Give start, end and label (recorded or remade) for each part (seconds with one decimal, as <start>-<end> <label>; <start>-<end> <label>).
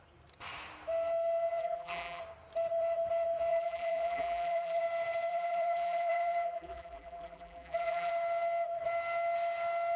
0.0-1.6 recorded; 1.6-2.2 remade; 2.2-3.5 recorded; 3.5-4.8 remade; 4.8-5.3 recorded; 5.3-8.1 remade; 8.1-10.0 recorded